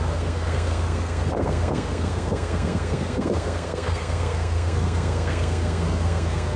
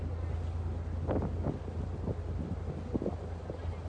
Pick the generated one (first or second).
first